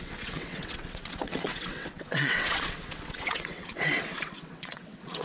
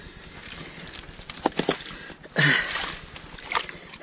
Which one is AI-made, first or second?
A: first